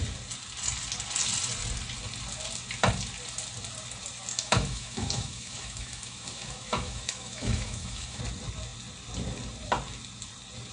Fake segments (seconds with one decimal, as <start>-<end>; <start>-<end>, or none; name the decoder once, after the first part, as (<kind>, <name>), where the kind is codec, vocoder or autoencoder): 4.3-8.2 (autoencoder, DAC-VAE)